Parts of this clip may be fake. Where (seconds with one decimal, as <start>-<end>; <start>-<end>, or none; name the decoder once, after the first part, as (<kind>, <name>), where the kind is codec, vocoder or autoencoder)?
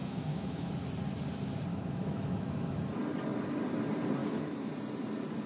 0.0-0.7 (autoencoder, DAC-VAE); 1.7-2.8; 4.2-4.7